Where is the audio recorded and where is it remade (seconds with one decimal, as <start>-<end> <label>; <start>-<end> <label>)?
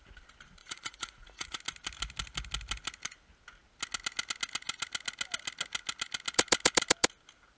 0.0-0.6 recorded; 0.6-1.6 remade; 1.6-7.6 recorded